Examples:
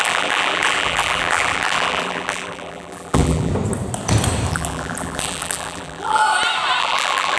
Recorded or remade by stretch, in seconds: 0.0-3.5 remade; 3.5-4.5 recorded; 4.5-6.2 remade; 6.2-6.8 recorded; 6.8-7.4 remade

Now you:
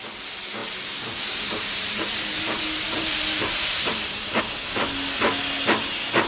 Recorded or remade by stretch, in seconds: 0.0-0.6 recorded; 0.6-4.4 remade; 4.4-6.3 recorded

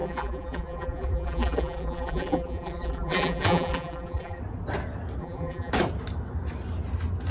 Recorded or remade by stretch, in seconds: 0.0-4.4 remade; 4.4-5.2 recorded; 5.2-5.7 remade; 5.7-7.3 recorded

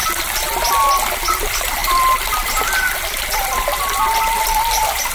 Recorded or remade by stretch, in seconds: 0.0-1.8 recorded; 1.8-5.1 remade

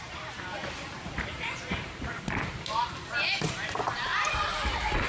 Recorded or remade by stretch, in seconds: 0.0-4.1 remade; 4.1-5.1 recorded

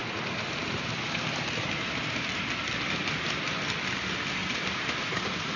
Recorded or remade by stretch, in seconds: 0.0-2.4 remade; 2.4-4.4 recorded; 4.4-5.6 remade

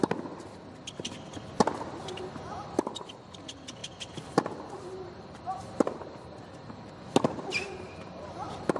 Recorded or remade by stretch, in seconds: 0.0-3.8 recorded; 3.8-6.9 remade; 6.9-8.8 recorded